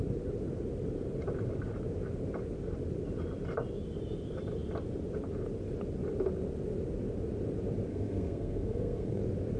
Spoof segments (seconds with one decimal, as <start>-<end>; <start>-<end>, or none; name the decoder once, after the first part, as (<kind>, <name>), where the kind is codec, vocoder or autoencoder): 7.9-9.2 (codec, SNAC)